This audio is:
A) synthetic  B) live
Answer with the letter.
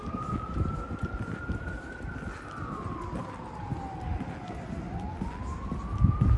B